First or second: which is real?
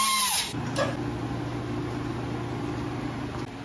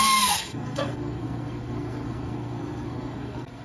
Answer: first